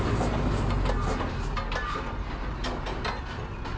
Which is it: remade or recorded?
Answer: recorded